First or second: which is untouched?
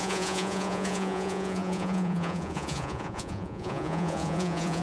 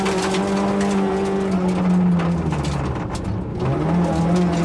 second